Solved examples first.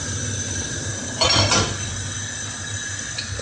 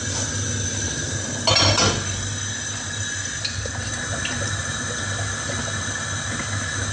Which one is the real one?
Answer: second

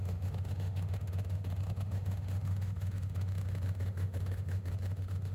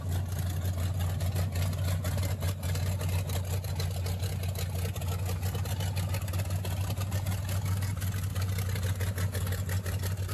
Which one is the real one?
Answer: second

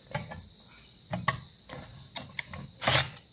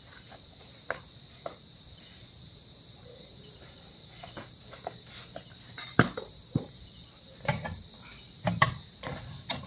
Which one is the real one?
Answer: first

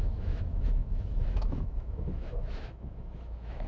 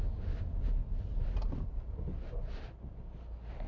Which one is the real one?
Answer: second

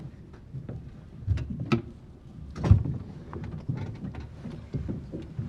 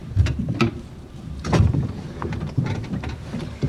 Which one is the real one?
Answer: first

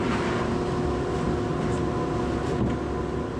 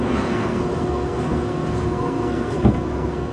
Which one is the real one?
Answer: first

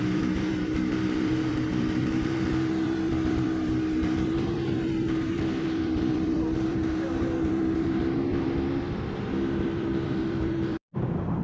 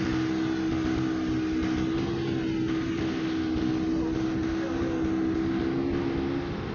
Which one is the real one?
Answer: second